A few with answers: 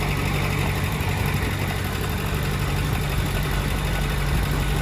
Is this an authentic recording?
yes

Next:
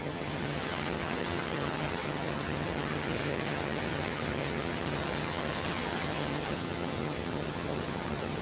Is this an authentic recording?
no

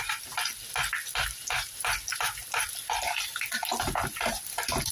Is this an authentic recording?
yes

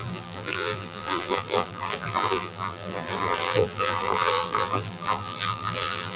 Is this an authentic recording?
no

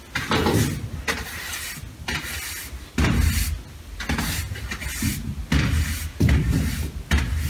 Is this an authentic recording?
yes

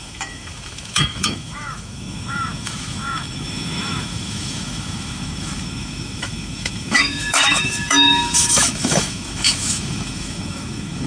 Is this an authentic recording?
no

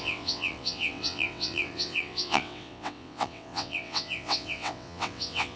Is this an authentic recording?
no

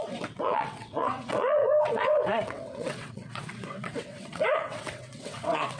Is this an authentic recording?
no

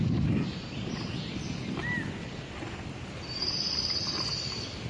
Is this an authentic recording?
yes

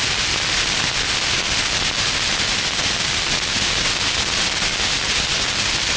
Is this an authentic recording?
yes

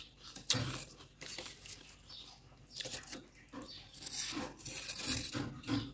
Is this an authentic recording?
yes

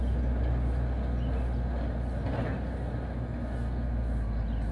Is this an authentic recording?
yes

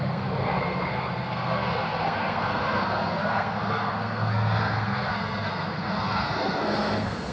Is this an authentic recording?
no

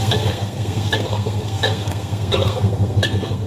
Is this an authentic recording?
no